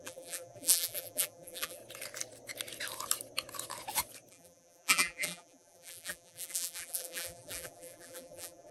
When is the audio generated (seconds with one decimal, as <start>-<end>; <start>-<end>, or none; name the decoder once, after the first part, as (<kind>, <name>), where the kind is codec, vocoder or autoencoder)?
0.0-1.8 (vocoder, BigVGAN v2); 4.3-8.7